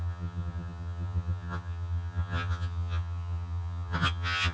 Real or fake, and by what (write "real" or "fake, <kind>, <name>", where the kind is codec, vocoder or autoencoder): fake, vocoder, HiFi-GAN